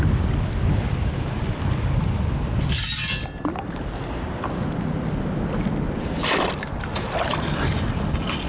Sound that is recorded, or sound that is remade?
recorded